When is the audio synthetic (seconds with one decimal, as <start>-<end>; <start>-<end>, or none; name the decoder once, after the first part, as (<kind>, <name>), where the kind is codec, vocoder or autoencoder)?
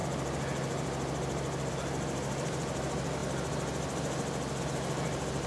none